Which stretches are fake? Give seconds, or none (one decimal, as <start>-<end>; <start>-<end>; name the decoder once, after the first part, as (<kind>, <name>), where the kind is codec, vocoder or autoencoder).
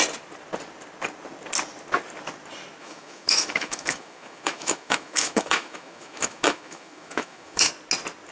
2.8-7.7 (autoencoder, DAC-VAE)